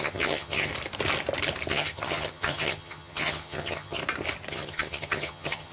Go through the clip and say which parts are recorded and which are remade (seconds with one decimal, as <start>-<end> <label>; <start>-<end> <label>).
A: 0.0-0.7 remade; 0.7-1.7 recorded; 1.7-4.0 remade; 4.0-4.5 recorded; 4.5-5.7 remade